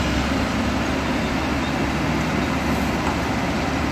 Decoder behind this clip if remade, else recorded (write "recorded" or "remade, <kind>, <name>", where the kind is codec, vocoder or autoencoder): recorded